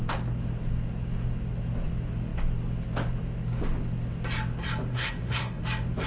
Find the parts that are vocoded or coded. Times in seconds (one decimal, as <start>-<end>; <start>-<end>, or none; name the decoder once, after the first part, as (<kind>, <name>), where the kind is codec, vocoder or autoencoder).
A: 4.9-5.6 (codec, SNAC)